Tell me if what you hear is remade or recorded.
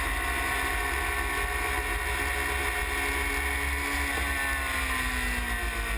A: recorded